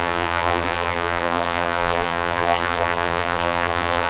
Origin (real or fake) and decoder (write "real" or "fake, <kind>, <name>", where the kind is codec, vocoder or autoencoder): fake, vocoder, BigVGAN v2